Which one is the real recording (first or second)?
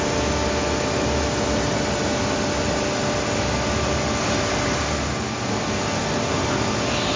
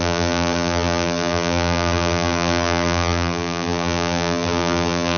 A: first